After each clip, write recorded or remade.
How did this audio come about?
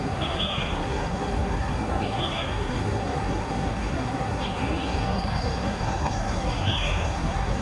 remade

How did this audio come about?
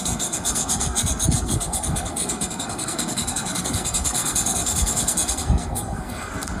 remade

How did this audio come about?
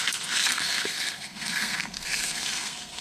remade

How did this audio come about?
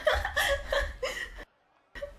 recorded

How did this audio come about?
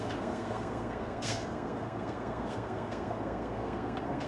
remade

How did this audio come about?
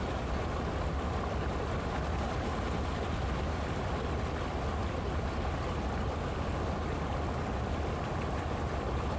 recorded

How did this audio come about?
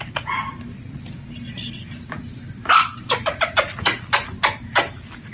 recorded